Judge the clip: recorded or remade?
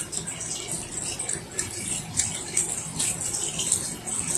recorded